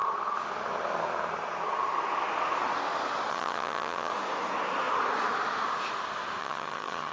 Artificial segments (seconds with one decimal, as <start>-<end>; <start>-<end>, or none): 3.3-4.1; 6.4-7.1